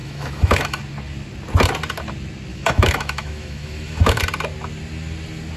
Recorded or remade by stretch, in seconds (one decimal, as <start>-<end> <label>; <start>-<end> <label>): 0.0-0.8 remade; 0.8-2.5 recorded; 2.5-4.2 remade; 4.2-5.6 recorded